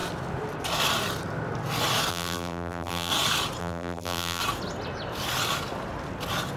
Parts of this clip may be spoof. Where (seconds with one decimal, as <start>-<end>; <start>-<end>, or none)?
2.1-3.1; 3.6-4.4